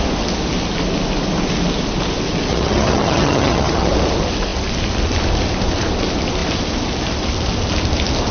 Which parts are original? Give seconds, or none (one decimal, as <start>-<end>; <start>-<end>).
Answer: 0.0-2.5; 3.9-8.3